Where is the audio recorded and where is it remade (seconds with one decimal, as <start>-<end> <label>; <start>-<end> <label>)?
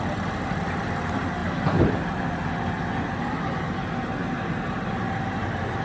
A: 0.0-5.8 recorded